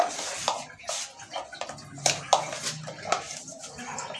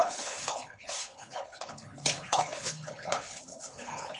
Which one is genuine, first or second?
first